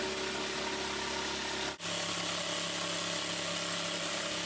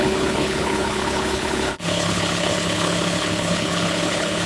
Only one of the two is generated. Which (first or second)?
second